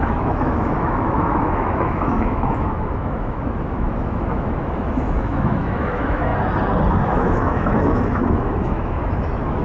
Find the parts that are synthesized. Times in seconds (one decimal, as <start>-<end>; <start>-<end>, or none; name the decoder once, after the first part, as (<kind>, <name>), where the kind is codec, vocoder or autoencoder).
0.0-6.3 (autoencoder, DAC-VAE); 7.0-9.6